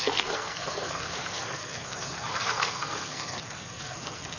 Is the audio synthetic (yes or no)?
yes